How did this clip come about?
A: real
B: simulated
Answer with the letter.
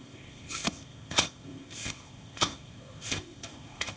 B